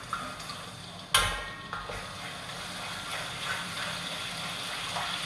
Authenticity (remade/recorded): recorded